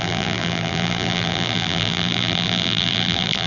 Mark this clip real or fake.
fake